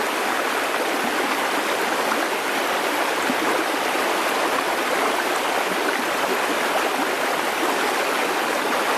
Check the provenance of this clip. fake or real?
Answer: real